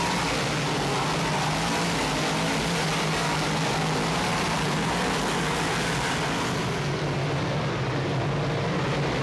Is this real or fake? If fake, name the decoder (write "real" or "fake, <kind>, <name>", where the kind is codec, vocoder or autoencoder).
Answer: real